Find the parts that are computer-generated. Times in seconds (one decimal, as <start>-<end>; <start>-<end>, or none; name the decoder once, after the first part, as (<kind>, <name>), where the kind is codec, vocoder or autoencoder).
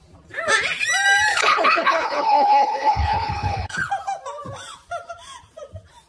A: 1.3-3.9 (codec, HILCodec)